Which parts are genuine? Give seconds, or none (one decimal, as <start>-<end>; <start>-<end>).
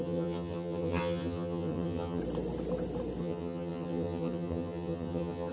2.2-3.2